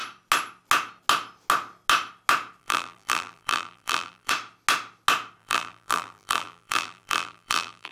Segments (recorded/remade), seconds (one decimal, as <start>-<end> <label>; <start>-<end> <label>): 0.0-2.6 recorded; 2.6-4.3 remade; 4.3-5.4 recorded; 5.4-7.9 remade